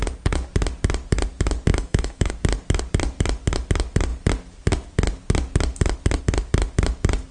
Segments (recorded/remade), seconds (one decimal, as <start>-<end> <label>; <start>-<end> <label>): 0.0-1.7 recorded; 1.7-2.3 remade; 2.3-7.3 recorded